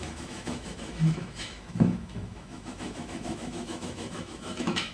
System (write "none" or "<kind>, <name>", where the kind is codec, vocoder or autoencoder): autoencoder, DAC-VAE